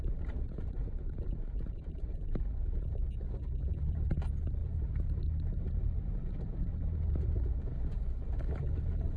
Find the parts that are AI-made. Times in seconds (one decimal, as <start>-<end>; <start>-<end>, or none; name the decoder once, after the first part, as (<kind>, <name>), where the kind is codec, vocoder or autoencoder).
0.0-3.0 (vocoder, BigVGAN v2); 3.7-9.2